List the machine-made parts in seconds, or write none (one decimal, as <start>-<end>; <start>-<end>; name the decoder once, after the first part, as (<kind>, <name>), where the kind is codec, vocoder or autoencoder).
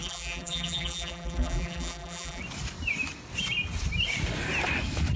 0.0-2.4 (vocoder, BigVGAN v2)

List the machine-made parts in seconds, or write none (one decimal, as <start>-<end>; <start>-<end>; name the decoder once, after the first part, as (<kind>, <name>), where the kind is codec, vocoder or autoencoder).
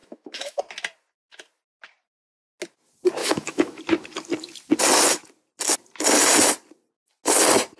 0.0-0.6 (autoencoder, DAC-VAE); 3.2-3.8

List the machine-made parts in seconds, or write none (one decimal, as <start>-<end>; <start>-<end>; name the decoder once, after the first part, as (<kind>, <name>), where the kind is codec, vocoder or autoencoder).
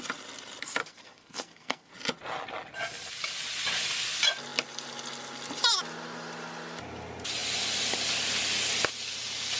0.8-1.9 (codec, SNAC)